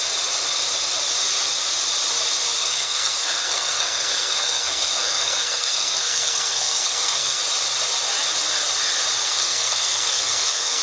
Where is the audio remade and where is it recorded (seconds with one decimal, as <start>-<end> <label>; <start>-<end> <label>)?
0.0-2.6 recorded; 2.6-7.4 remade; 7.4-9.2 recorded; 9.2-10.8 remade